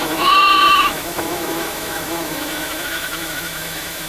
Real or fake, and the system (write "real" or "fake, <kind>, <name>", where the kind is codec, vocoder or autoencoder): fake, autoencoder, DAC-VAE